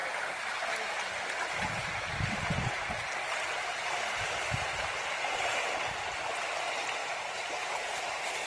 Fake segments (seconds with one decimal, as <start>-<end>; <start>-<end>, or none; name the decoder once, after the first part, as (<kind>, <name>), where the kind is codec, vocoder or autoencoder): 7.0-8.5 (vocoder, BigVGAN v2)